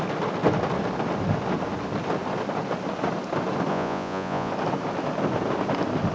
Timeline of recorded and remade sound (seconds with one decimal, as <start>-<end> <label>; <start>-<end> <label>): 0.0-3.7 recorded; 3.7-4.5 remade; 4.5-6.1 recorded